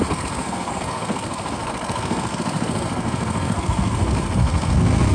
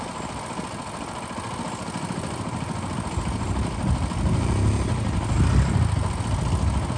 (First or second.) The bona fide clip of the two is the second